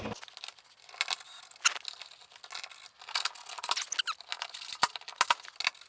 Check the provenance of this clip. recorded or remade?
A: recorded